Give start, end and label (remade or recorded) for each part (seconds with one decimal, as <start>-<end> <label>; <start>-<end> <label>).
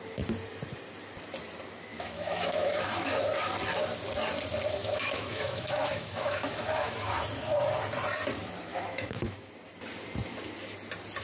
0.0-1.9 recorded; 1.9-3.2 remade; 3.2-4.8 recorded; 4.8-7.1 remade; 7.1-8.7 recorded; 8.7-9.5 remade; 9.5-11.2 recorded